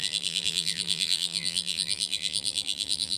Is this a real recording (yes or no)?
no